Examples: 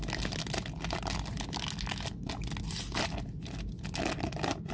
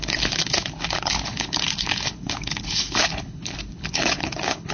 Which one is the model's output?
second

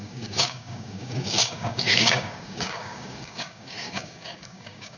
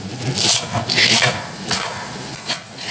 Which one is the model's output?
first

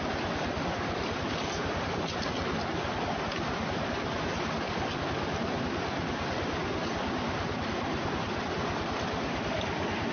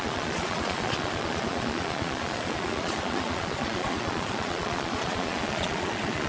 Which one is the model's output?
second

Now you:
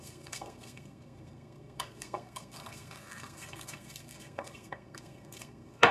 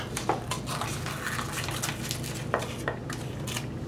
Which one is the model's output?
first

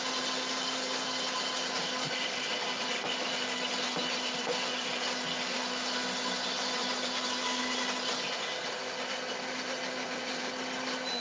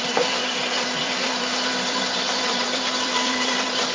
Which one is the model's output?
second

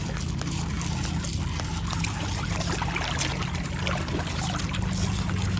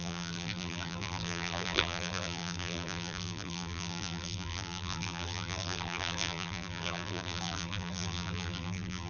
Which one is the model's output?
second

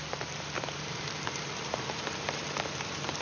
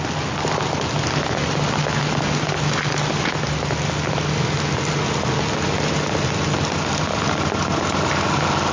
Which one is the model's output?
first